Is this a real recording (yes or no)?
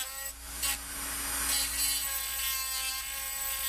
yes